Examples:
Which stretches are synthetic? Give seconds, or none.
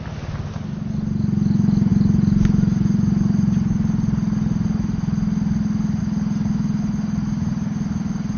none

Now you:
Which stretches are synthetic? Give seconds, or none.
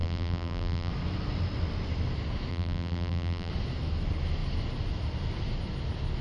0.0-0.9 (vocoder, BigVGAN v2); 2.5-3.5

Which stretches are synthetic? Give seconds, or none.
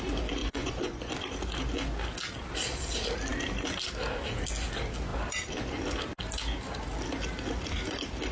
0.4-1.1 (vocoder, Vocos)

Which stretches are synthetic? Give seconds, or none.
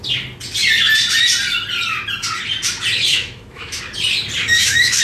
3.1-3.8 (autoencoder, DAC-VAE); 4.4-5.0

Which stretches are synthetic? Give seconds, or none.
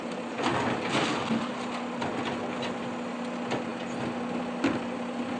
none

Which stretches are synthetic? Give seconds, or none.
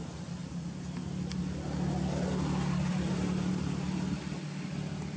none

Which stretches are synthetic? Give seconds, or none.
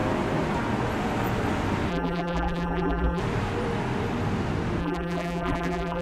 1.9-3.2 (vocoder, BigVGAN v2); 4.8-6.0